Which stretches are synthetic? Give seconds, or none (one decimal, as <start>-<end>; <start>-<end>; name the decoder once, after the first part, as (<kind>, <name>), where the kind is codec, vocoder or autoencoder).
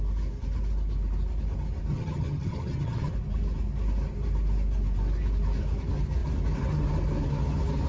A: 1.9-3.1 (vocoder, HiFi-GAN)